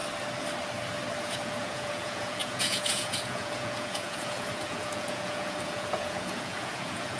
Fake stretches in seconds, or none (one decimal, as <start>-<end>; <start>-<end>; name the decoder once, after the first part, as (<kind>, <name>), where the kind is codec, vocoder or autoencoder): 1.2-7.2 (vocoder, Vocos)